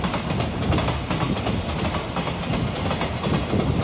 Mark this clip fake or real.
real